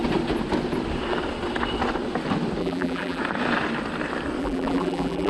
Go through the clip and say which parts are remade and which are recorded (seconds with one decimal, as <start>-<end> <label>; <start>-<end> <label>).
0.0-2.6 recorded; 2.6-3.2 remade; 3.2-4.4 recorded; 4.4-5.3 remade